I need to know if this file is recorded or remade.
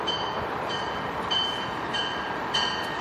remade